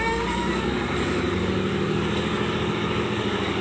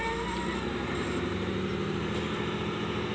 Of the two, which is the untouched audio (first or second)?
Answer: second